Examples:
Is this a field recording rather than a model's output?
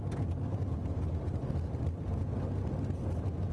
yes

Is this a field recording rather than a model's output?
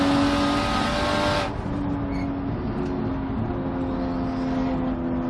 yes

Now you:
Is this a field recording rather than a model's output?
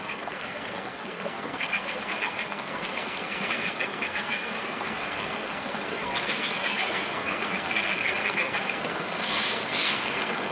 no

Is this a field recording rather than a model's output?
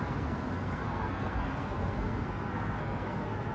no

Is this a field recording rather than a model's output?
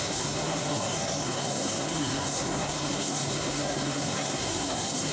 no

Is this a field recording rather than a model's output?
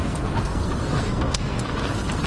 no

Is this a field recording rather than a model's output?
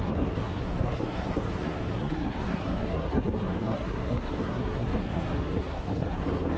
no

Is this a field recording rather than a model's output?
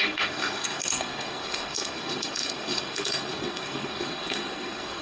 no